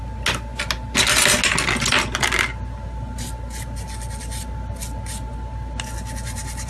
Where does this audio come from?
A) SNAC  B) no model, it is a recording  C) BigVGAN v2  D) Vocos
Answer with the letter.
B